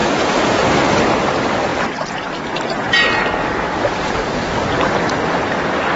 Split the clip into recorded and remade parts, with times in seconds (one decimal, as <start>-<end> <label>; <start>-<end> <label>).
0.0-0.6 remade; 0.6-6.0 recorded